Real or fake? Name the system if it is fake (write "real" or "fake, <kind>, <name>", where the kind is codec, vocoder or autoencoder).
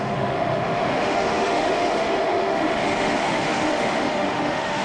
fake, autoencoder, DAC-VAE